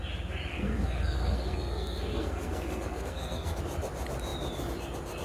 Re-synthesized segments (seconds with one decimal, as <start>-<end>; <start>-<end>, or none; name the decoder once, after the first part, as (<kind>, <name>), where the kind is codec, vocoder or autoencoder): 0.5-3.6 (codec, SNAC)